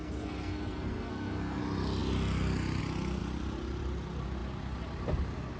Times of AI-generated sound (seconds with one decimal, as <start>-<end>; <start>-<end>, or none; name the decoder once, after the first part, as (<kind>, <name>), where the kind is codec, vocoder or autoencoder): 0.0-1.6 (codec, SNAC)